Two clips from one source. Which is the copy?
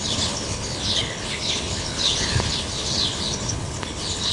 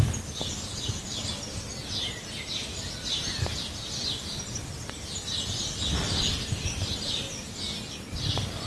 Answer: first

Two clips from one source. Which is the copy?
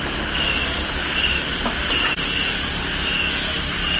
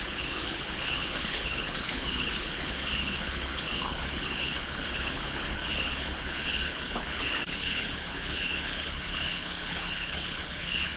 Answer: second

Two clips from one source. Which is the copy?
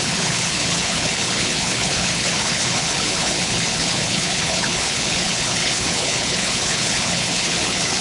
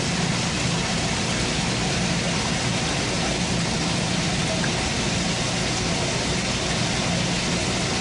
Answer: first